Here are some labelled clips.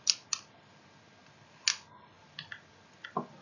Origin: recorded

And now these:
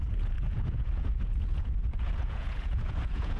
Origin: remade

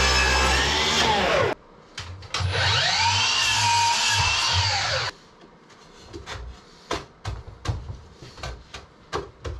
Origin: recorded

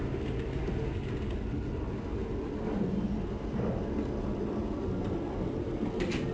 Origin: recorded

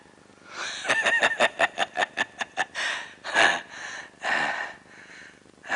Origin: recorded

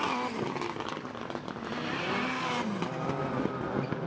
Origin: recorded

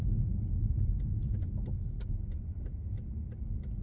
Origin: recorded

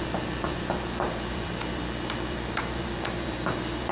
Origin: remade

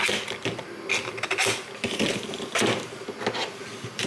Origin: recorded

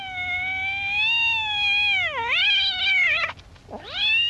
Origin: recorded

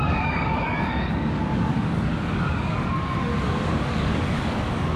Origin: remade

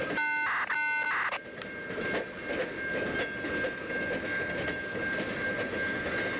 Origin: recorded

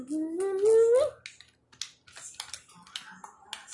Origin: recorded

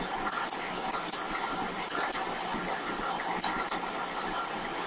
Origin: recorded